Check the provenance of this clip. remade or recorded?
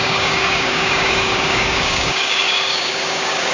remade